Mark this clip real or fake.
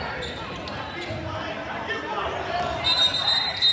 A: real